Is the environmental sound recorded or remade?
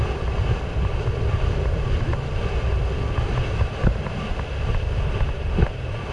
recorded